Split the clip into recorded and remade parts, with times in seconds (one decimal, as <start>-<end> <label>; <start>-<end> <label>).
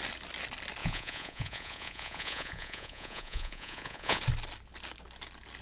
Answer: 0.0-0.8 recorded; 0.8-4.2 remade; 4.2-5.6 recorded